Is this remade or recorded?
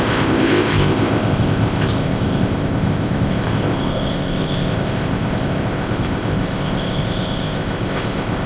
remade